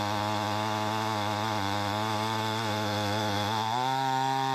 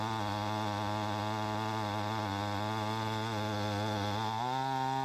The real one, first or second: second